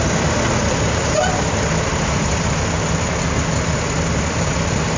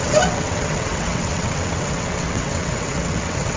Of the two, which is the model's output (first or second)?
second